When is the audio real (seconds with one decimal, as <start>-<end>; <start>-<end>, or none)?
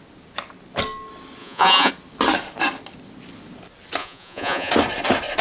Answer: 0.0-1.4; 1.9-4.0; 4.7-5.4